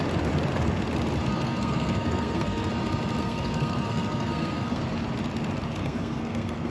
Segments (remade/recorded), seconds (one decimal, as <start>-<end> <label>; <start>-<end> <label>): 0.0-1.3 recorded; 1.3-2.7 remade; 2.7-3.2 recorded; 3.2-4.8 remade; 4.8-5.8 recorded; 5.8-6.7 remade